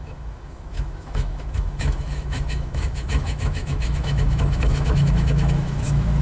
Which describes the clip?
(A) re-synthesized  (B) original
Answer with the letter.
A